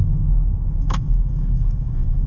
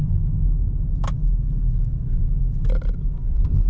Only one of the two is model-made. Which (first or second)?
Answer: first